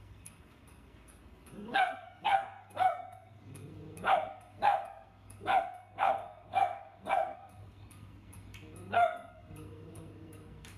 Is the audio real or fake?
fake